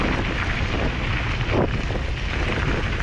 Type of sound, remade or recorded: recorded